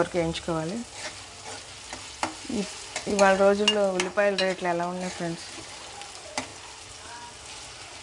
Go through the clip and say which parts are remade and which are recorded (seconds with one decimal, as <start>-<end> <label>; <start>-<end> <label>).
0.0-8.0 recorded